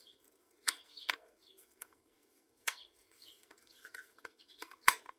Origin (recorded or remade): remade